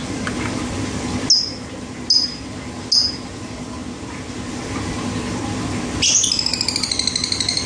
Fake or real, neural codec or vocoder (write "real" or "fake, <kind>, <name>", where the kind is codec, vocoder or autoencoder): real